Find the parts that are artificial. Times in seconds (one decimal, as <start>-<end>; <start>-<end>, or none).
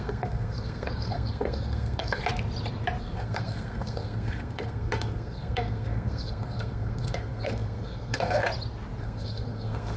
0.0-2.2; 3.0-8.4; 9.0-10.0